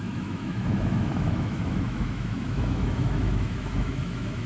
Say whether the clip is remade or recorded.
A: remade